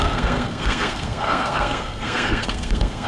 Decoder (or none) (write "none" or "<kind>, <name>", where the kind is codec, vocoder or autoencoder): codec, SNAC